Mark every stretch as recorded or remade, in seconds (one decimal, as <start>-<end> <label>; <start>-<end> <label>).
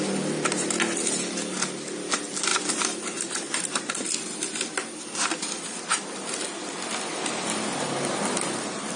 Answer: 0.0-9.0 recorded